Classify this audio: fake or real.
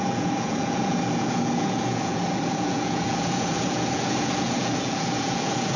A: fake